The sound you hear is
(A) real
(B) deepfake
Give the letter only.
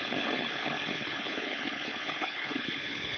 B